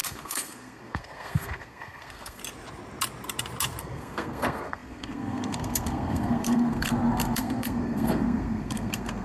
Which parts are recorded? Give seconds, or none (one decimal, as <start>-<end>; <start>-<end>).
2.4-3.8

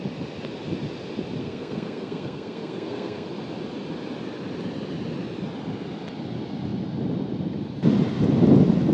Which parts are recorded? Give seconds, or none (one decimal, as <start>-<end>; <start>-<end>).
0.0-1.4; 3.3-8.9

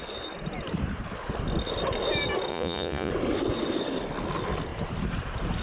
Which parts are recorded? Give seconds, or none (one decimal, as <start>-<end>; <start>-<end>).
0.0-2.5; 3.1-5.6

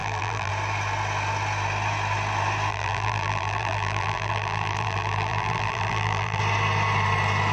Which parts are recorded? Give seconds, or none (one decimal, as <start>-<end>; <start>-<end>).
0.5-2.7; 6.4-7.5

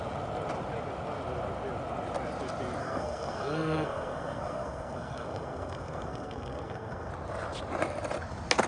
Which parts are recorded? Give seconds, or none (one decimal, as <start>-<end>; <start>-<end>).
0.0-2.8; 7.1-8.7

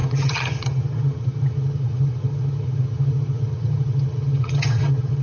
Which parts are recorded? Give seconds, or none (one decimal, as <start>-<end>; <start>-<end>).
none

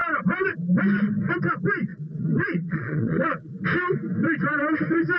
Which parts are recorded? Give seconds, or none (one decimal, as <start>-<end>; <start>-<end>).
0.0-1.9; 3.5-5.2

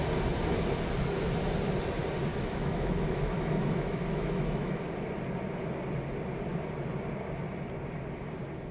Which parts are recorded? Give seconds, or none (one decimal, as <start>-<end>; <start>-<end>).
0.0-2.3; 4.9-8.7